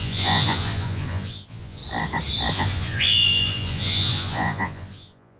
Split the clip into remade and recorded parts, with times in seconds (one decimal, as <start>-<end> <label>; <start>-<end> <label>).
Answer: 0.0-1.8 remade; 1.8-2.5 recorded; 2.5-5.4 remade

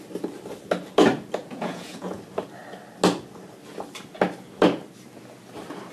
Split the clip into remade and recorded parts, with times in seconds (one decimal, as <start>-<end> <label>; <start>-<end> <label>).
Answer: 0.0-1.4 recorded; 1.4-2.2 remade; 2.2-5.9 recorded